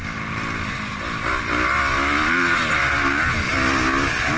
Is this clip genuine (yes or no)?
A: yes